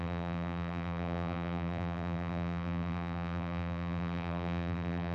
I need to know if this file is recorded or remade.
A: remade